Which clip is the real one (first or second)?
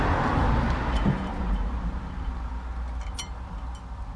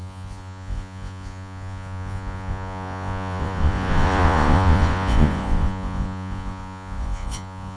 first